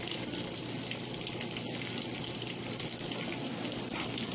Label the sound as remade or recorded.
recorded